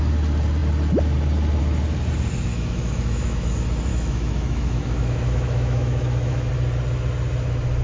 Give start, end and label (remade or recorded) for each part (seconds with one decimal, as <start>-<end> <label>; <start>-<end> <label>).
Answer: 0.0-2.5 recorded; 2.5-3.5 remade; 3.5-3.9 recorded; 3.9-6.5 remade; 6.5-7.8 recorded